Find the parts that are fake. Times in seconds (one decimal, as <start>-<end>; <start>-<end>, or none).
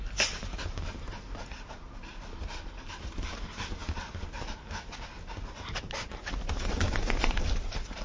0.0-3.8; 6.5-8.0